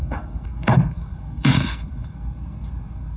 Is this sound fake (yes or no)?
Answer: yes